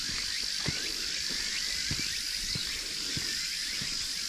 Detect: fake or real real